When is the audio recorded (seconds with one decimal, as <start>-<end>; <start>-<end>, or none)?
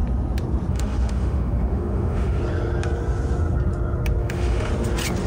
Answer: 0.0-0.7; 2.4-4.2; 4.7-5.3